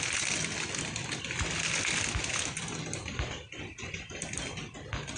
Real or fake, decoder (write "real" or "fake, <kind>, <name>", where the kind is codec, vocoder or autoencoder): real